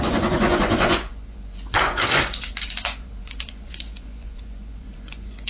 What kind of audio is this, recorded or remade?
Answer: remade